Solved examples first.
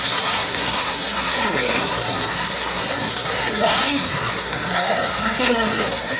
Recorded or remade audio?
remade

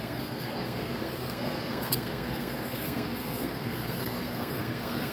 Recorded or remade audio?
remade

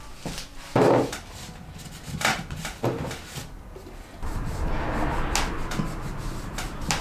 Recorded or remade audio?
recorded